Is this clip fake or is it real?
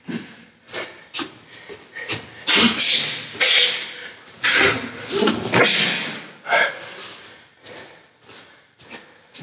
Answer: real